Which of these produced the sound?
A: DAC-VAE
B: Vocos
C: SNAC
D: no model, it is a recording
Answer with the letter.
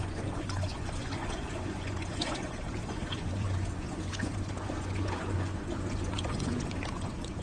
B